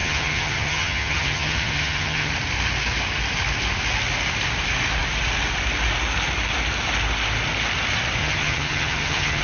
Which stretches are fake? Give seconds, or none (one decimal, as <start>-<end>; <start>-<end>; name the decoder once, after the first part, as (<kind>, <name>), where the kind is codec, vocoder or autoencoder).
0.0-2.3 (vocoder, HiFi-GAN); 8.2-9.4